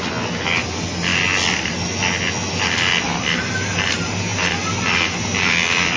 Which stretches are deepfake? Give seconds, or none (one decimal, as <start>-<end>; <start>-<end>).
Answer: none